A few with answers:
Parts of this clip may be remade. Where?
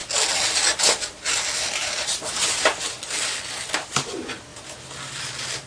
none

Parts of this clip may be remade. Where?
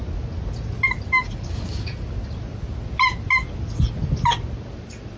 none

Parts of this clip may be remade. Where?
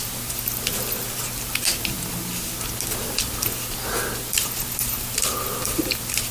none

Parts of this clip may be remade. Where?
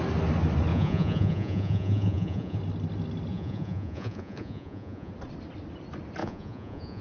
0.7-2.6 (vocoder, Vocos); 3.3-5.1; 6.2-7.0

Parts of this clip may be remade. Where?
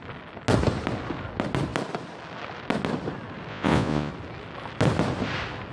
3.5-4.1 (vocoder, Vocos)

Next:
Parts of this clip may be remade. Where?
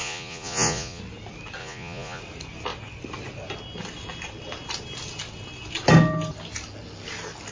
0.0-1.0 (vocoder, Vocos); 1.6-2.2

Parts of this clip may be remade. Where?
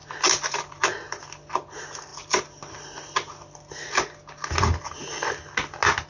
none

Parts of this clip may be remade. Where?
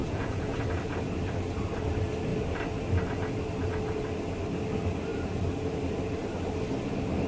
0.0-0.5 (vocoder, Vocos)